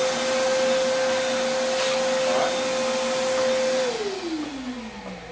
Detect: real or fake real